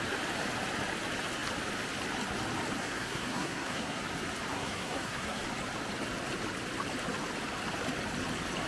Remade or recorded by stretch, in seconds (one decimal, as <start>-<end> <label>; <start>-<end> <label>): 0.0-2.8 recorded; 2.8-4.0 remade; 4.0-4.5 recorded; 4.5-5.4 remade; 5.4-8.7 recorded